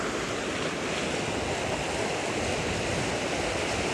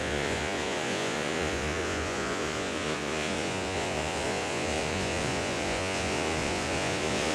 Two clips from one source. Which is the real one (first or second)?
first